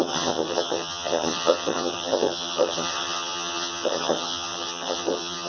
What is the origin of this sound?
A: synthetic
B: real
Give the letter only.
A